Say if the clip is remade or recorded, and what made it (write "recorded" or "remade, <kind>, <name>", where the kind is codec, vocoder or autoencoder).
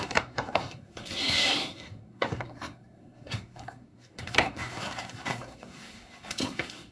remade, codec, SNAC